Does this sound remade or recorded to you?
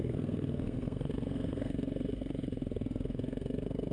remade